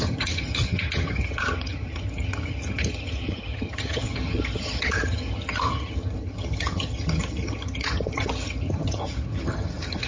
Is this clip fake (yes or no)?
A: yes